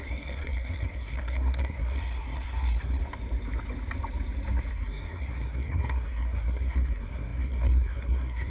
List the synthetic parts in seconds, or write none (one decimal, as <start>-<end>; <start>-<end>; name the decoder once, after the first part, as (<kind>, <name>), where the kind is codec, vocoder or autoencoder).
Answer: 0.0-3.0 (codec, SNAC); 4.7-8.5